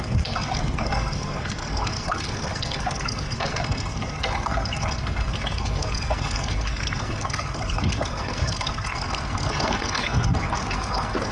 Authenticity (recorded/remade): remade